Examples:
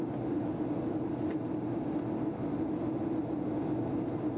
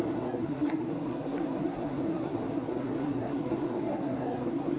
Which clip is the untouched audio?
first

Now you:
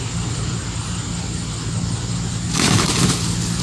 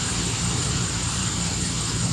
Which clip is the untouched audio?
first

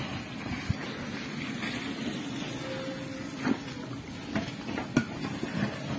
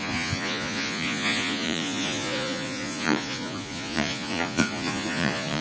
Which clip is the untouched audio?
first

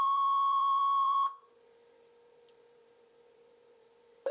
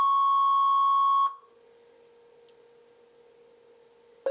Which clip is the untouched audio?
second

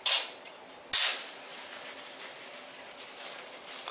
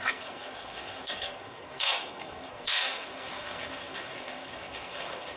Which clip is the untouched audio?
first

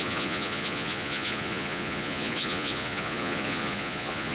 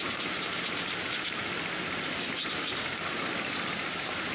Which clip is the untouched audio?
second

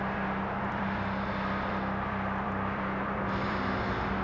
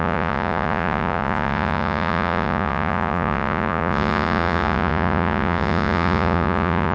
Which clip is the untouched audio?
first